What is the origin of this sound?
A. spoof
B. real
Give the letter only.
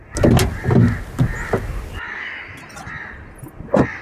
B